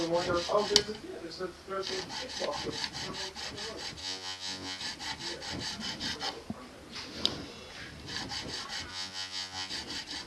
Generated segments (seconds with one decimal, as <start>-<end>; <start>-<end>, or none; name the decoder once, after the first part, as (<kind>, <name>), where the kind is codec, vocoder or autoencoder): 4.0-4.8 (vocoder, Vocos); 8.9-9.7

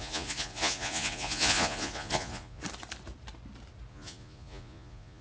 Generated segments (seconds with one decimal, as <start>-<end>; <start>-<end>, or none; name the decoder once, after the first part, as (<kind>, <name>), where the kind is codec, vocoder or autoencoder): 0.0-2.6 (vocoder, Vocos); 3.9-5.2

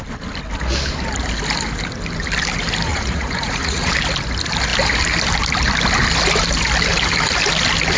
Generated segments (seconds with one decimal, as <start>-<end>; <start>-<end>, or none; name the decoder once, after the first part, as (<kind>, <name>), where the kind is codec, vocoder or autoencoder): 2.9-3.9 (vocoder, Vocos)

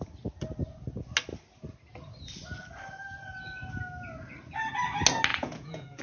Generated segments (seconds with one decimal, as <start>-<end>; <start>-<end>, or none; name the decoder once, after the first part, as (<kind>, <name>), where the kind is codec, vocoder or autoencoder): 5.3-6.0 (vocoder, Vocos)

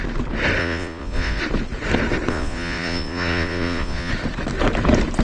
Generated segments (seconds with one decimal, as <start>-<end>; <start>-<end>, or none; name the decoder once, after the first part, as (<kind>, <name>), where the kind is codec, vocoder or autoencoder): 0.6-1.4 (vocoder, Vocos); 2.3-4.1

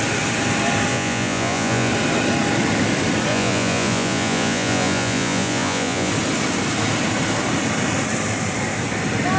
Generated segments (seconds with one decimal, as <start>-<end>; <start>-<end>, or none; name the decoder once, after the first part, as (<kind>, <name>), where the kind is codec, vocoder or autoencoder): 0.9-1.9 (vocoder, Vocos); 3.3-6.1